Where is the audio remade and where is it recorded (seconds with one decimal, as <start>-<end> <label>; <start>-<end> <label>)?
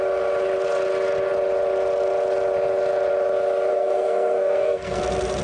0.0-3.7 recorded; 3.7-5.0 remade; 5.0-5.4 recorded